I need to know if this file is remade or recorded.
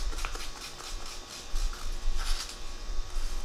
recorded